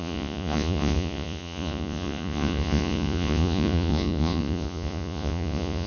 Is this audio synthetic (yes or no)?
yes